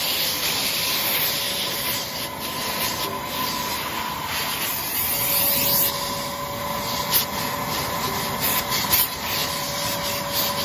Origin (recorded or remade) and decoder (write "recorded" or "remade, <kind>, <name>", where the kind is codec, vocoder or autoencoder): recorded